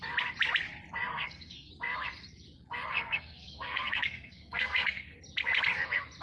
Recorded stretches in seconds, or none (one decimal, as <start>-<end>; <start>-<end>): 0.0-1.1; 1.7-2.9; 5.2-6.2